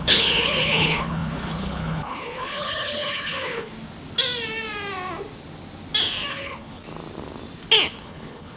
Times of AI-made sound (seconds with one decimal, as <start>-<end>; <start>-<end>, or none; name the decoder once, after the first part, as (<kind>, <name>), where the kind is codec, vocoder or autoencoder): 0.0-3.7 (codec, HILCodec); 6.3-6.8; 7.9-8.6